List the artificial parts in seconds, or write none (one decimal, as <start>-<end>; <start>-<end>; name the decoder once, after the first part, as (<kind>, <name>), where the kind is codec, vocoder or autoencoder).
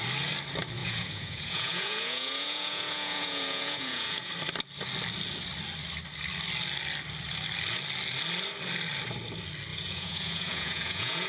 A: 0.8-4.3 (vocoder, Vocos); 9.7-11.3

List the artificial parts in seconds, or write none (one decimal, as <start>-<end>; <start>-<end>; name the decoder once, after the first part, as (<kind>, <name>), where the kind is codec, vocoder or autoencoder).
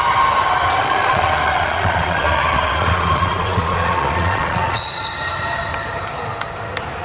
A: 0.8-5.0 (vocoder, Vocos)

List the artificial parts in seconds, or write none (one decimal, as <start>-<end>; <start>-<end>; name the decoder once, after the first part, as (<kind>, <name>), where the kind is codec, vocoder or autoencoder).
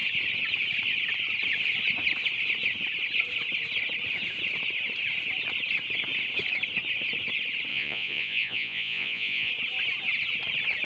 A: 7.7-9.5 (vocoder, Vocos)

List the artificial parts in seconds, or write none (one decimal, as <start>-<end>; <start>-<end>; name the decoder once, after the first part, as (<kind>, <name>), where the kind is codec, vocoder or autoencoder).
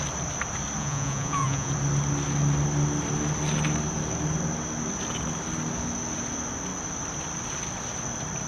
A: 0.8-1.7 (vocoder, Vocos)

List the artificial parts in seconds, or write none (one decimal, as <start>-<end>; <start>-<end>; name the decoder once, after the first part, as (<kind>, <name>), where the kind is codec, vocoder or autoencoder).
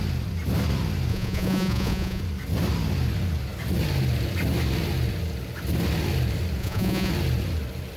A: 1.1-2.2 (vocoder, Vocos); 6.6-7.1